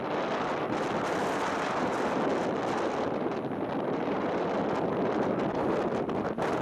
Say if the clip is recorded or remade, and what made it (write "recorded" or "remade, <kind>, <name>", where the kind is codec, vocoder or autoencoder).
recorded